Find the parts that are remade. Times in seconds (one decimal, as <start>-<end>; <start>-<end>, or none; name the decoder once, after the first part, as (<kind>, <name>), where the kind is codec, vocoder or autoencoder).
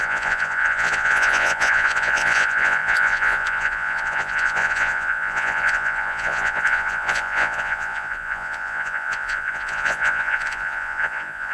0.0-11.5 (vocoder, Vocos)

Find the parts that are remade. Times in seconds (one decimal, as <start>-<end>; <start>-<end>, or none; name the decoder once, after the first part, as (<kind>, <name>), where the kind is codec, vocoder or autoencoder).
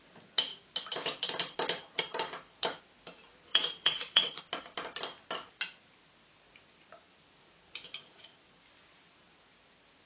3.5-4.4 (vocoder, WaveNeXt)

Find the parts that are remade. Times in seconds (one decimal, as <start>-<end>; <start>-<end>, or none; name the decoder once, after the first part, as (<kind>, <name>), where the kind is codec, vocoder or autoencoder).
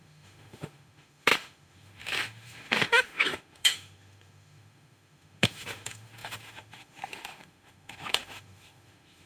0.0-9.3 (autoencoder, DAC-VAE)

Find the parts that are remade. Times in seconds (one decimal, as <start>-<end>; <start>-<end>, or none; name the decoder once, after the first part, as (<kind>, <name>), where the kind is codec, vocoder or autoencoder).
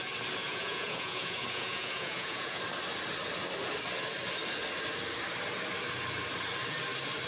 0.4-2.6 (vocoder, Vocos)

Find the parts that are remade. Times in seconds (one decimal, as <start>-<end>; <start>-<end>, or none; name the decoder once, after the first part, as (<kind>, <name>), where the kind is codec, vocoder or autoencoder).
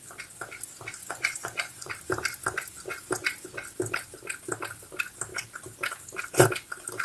1.0-1.9 (vocoder, Vocos)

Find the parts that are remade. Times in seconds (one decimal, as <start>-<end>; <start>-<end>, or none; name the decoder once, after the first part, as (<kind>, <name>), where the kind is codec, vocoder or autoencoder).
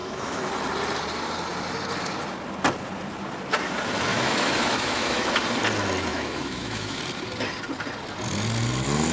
0.0-0.5 (autoencoder, DAC-VAE); 4.1-5.3; 6.1-7.0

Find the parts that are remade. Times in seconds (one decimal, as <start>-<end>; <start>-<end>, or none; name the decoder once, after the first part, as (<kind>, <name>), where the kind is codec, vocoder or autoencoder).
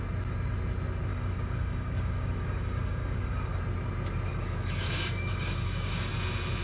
1.1-3.6 (codec, DAC); 4.3-6.1